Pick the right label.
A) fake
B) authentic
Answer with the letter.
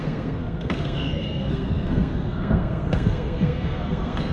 A